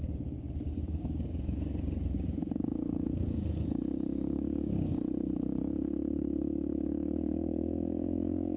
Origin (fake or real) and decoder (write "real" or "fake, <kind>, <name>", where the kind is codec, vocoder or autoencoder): fake, codec, DAC